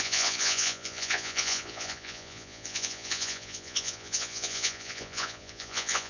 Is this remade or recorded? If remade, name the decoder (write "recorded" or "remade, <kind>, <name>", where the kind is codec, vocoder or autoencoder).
remade, vocoder, Vocos